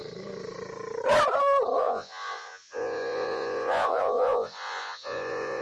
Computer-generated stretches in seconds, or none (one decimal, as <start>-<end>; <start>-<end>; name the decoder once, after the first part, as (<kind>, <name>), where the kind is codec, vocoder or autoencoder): 1.8-5.6 (vocoder, Vocos)

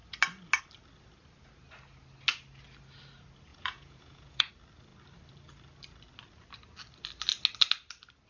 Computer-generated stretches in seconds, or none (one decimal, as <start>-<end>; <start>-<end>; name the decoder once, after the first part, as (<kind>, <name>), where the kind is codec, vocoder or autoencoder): 3.5-4.5 (vocoder, Vocos)

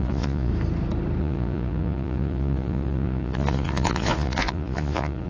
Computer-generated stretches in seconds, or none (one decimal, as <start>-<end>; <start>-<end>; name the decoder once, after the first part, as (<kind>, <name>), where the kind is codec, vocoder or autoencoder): 0.0-0.5 (vocoder, Vocos); 1.2-5.3

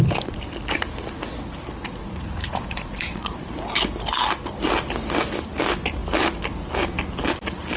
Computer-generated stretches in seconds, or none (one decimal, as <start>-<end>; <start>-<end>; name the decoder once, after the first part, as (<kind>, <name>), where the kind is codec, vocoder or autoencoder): 2.0-3.5 (vocoder, Vocos)

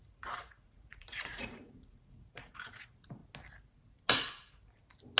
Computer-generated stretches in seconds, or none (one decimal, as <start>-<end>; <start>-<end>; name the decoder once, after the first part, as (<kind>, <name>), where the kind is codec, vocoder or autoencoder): 0.0-3.2 (vocoder, Vocos)

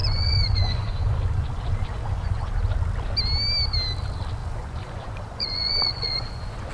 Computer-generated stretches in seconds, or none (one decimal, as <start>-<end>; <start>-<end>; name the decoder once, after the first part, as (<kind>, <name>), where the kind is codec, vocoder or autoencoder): 0.0-2.4 (vocoder, Vocos); 4.4-6.7

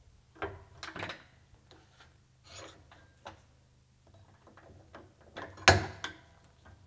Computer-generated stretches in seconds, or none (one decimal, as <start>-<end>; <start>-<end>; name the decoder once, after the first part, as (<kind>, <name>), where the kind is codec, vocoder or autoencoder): none

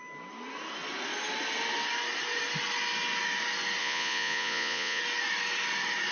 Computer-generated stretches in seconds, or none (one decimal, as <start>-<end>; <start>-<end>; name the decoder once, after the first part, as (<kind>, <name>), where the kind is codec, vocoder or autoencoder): 3.8-5.0 (vocoder, Vocos)